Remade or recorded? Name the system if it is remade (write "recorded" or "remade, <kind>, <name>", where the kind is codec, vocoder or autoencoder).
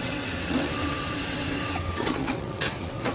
remade, vocoder, WaveNeXt